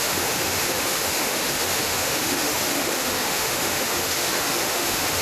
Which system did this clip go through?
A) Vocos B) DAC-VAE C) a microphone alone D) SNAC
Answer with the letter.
B